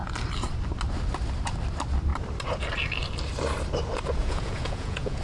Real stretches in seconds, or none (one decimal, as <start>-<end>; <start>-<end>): 0.0-4.2